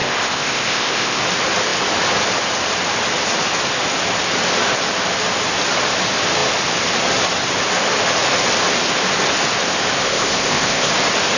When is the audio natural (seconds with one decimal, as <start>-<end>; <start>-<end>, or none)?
1.2-10.0; 10.9-11.4

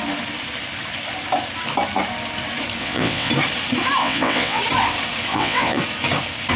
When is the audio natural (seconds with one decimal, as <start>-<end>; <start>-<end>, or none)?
0.0-2.8; 3.3-4.0; 4.6-5.3; 5.8-6.6

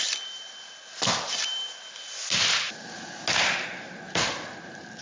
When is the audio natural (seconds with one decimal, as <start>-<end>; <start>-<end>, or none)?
0.0-5.0

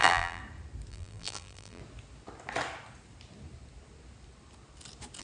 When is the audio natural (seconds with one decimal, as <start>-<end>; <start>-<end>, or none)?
0.4-0.9; 1.8-5.2

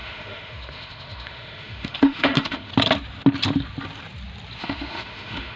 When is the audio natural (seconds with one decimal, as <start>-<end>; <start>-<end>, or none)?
2.7-4.6